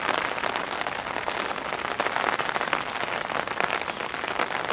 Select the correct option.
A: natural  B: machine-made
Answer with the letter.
A